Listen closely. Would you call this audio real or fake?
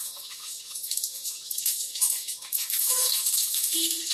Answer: fake